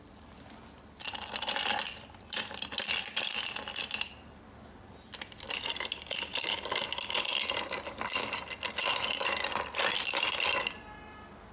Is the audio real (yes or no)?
yes